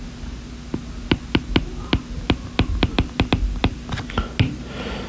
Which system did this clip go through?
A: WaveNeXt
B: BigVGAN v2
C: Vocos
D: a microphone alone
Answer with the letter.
D